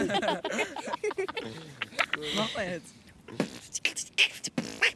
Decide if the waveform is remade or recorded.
recorded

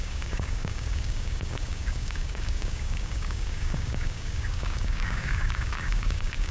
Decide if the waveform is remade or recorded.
remade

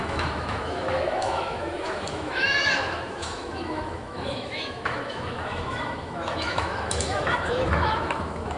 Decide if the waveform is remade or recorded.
remade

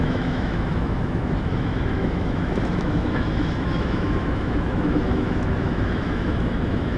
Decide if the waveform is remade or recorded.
remade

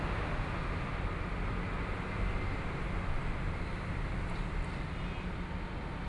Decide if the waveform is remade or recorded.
recorded